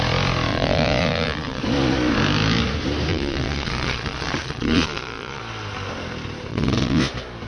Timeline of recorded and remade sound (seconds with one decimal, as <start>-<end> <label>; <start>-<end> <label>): 0.0-0.5 recorded; 0.5-1.6 remade; 1.6-3.1 recorded; 3.1-5.4 remade; 5.4-6.5 recorded; 6.5-7.0 remade; 7.0-7.5 recorded